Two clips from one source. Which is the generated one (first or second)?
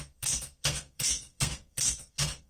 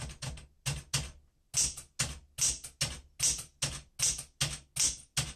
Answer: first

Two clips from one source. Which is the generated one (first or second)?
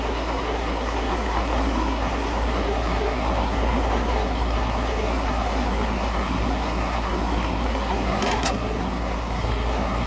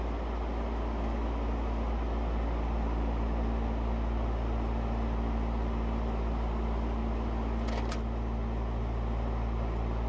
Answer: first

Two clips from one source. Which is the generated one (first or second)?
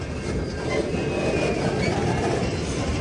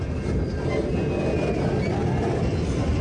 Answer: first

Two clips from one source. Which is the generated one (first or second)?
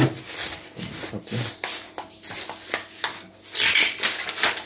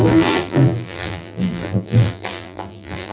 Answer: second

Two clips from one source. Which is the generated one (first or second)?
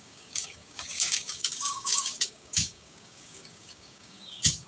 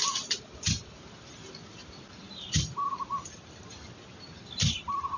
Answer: first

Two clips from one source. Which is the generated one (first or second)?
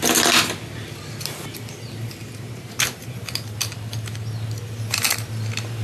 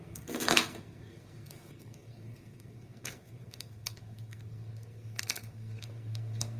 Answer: second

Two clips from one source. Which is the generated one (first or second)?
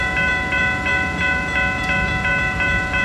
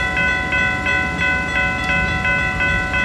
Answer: first